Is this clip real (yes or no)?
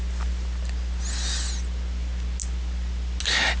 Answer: yes